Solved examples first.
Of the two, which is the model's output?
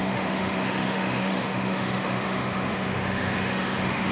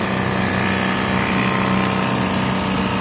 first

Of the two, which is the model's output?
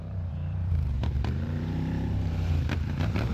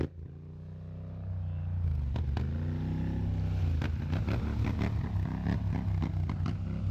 first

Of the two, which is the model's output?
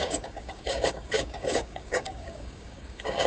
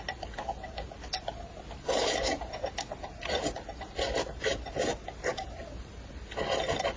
first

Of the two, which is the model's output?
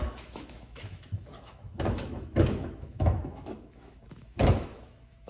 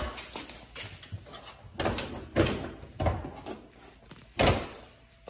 first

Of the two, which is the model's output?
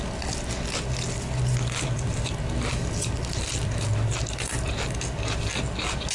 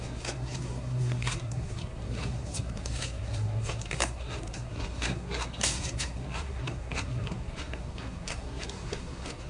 second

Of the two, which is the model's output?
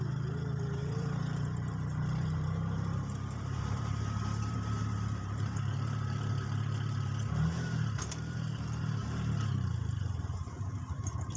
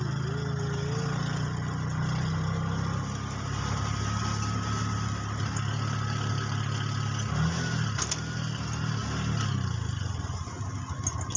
first